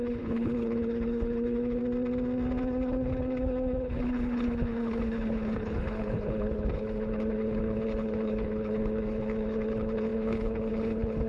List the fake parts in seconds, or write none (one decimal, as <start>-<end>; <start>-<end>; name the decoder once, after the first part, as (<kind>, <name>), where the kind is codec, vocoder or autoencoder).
0.0-1.8 (codec, HILCodec); 2.6-11.3